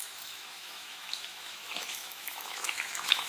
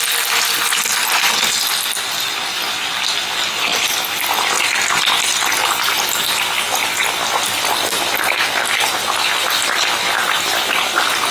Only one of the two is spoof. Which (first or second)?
first